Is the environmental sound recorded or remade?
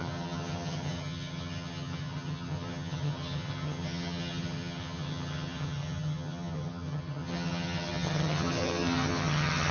remade